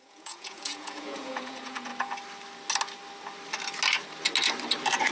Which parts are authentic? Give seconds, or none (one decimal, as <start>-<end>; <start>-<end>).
1.9-5.1